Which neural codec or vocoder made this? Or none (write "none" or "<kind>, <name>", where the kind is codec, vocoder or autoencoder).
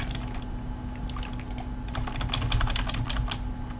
none